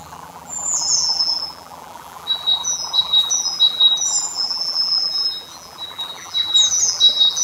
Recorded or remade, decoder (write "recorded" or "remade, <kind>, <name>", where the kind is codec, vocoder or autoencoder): remade, vocoder, BigVGAN v2